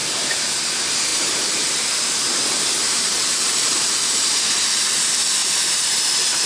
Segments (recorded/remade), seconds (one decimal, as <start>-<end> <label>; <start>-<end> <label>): 0.0-0.7 remade; 0.7-1.1 recorded; 1.1-4.6 remade; 4.6-5.4 recorded; 5.4-6.5 remade

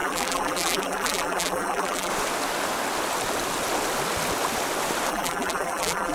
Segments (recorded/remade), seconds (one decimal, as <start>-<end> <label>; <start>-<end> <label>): 0.0-2.1 remade; 2.1-5.1 recorded; 5.1-6.1 remade

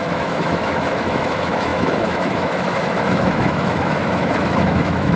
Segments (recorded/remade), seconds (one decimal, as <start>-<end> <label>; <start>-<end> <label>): 0.0-5.2 remade

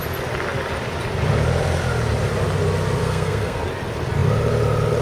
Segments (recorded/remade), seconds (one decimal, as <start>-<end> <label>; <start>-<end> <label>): 0.0-3.0 recorded; 3.0-3.6 remade; 3.6-5.0 recorded

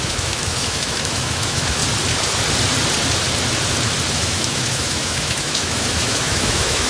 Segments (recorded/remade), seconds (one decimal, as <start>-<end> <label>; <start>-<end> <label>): 0.0-1.8 remade; 1.8-4.1 recorded; 4.1-6.9 remade

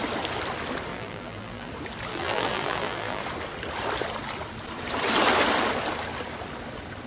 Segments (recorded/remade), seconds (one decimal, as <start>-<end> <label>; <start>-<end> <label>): 0.0-0.9 recorded; 0.9-1.7 remade; 1.7-2.1 recorded; 2.1-3.2 remade; 3.2-7.1 recorded

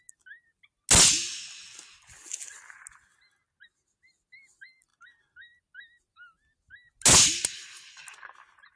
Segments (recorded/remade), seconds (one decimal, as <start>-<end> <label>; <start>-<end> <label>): 0.0-8.8 recorded

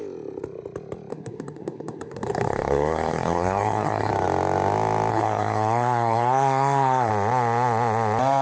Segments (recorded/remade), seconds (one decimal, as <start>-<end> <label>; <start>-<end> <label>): 0.0-1.1 recorded; 1.1-4.1 remade; 4.1-5.1 recorded; 5.1-7.1 remade; 7.1-8.4 recorded